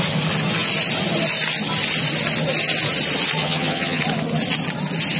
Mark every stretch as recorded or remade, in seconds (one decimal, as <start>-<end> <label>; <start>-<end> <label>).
0.0-3.4 recorded; 3.4-4.0 remade; 4.0-5.2 recorded